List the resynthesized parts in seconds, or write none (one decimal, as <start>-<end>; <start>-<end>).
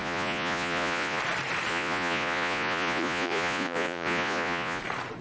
0.0-1.2; 1.7-4.8